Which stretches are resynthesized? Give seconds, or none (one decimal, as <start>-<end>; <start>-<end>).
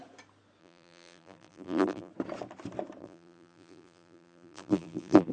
0.6-2.1; 3.0-5.3